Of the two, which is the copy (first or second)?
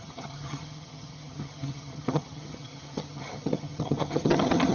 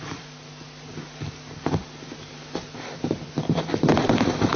first